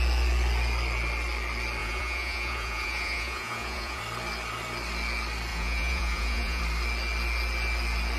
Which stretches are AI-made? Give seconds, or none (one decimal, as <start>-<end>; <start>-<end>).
1.8-4.0; 5.5-6.6